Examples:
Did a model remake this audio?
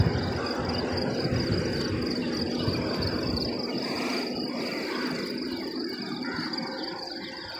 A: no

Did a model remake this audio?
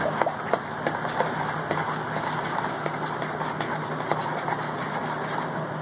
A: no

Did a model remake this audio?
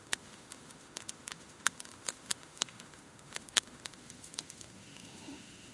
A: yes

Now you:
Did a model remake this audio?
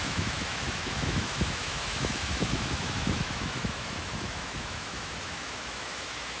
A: yes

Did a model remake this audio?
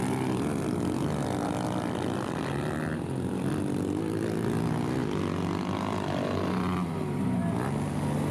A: no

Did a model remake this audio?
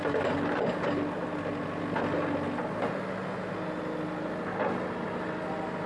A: no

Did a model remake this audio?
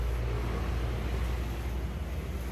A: no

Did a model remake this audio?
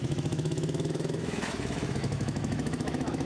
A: yes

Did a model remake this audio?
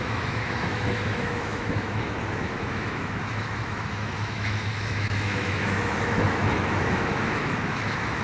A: yes